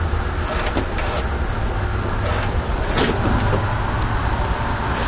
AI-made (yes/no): no